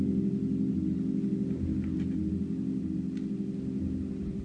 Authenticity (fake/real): real